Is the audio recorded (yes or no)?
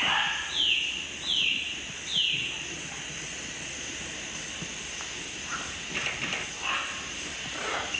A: yes